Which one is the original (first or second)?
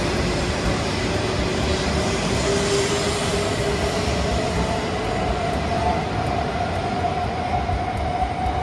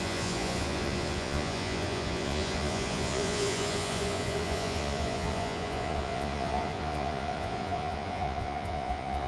first